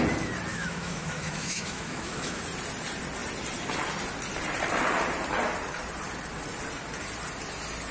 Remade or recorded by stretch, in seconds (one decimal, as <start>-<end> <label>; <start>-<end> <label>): 0.0-0.5 recorded; 0.5-2.4 remade; 2.4-7.9 recorded